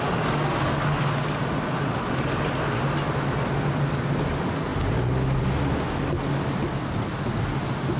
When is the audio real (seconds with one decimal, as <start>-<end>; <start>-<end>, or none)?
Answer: 0.0-8.0